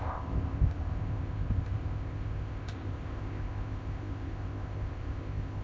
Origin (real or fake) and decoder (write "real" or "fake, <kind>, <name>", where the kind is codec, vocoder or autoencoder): fake, codec, ZipCodec